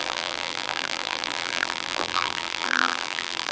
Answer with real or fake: fake